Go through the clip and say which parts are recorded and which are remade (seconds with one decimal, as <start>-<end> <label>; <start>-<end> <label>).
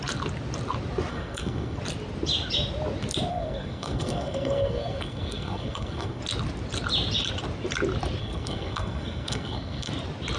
0.0-1.1 recorded; 1.1-1.8 remade; 1.8-3.3 recorded; 3.3-6.2 remade; 6.2-8.2 recorded; 8.2-9.9 remade; 9.9-10.4 recorded